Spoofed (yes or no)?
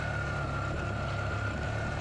no